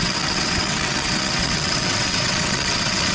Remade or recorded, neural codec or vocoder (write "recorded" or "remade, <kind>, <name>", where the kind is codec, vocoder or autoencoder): remade, vocoder, WaveNeXt